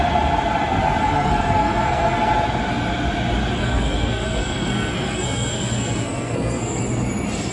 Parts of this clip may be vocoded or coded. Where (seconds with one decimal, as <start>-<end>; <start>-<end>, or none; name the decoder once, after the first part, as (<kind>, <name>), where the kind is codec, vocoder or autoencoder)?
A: 1.0-2.3 (codec, SNAC); 3.6-6.8